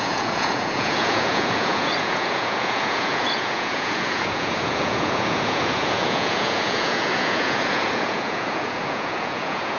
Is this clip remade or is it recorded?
remade